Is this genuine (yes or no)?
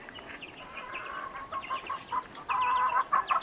yes